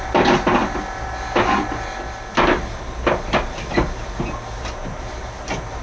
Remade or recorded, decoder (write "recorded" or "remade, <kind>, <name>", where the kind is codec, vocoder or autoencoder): recorded